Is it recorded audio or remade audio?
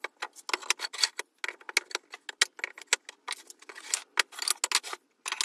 recorded